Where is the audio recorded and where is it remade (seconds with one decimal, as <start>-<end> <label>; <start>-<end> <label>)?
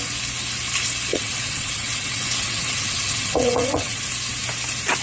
0.0-1.1 recorded; 1.1-4.1 remade; 4.1-5.0 recorded